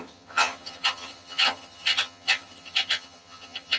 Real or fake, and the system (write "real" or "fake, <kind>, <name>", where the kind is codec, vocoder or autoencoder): fake, vocoder, HiFi-GAN